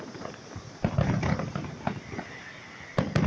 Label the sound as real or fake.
real